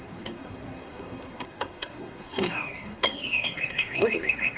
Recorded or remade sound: remade